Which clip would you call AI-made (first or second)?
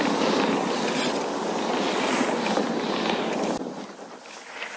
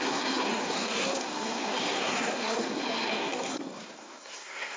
second